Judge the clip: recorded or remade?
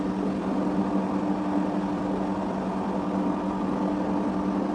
recorded